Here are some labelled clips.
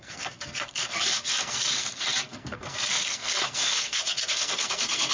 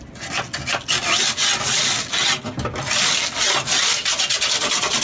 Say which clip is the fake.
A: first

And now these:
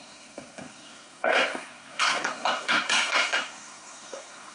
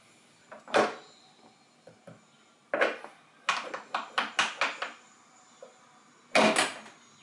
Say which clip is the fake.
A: first